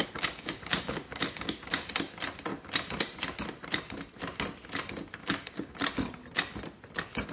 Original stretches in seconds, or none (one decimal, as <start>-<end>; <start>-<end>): 1.9-5.2; 5.7-7.3